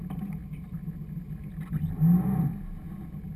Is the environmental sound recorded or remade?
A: recorded